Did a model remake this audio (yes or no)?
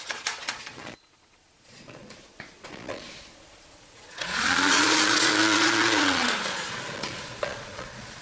yes